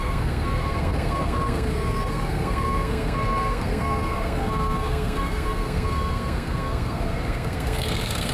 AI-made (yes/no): yes